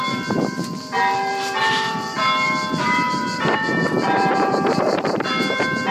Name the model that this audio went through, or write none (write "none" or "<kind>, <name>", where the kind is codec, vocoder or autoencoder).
vocoder, BigVGAN v2